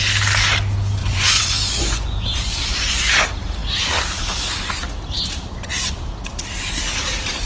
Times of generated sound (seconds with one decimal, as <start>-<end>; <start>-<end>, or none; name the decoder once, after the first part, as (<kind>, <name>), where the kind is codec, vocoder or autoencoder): 1.0-3.1 (vocoder, Vocos)